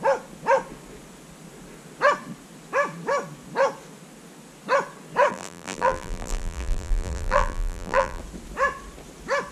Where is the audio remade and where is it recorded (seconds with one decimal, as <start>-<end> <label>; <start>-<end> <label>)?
0.0-5.3 recorded; 5.3-8.2 remade; 8.2-9.5 recorded